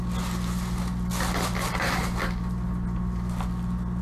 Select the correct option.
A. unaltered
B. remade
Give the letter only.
A